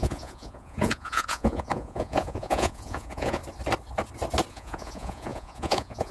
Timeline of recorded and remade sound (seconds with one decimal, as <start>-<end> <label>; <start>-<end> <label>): 0.0-3.4 remade; 3.4-4.5 recorded; 4.5-6.1 remade